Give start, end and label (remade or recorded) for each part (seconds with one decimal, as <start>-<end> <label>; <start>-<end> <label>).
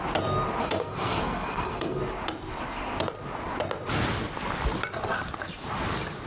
0.0-0.6 recorded; 0.6-2.0 remade; 2.0-6.3 recorded